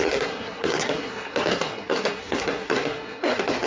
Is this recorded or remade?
remade